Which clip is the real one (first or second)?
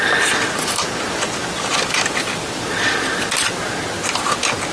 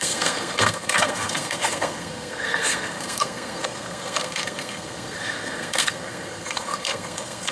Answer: first